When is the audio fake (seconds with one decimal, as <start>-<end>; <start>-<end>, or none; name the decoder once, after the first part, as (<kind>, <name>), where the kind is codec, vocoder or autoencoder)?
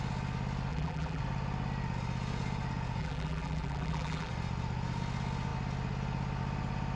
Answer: 0.7-1.2 (vocoder, BigVGAN v2); 3.0-4.3